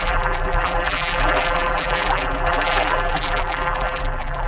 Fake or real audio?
fake